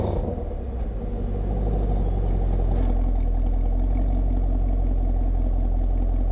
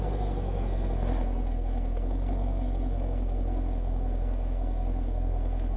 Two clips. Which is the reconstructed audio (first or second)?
second